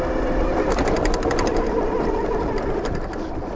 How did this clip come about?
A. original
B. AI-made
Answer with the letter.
A